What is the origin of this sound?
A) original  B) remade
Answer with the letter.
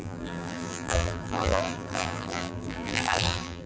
B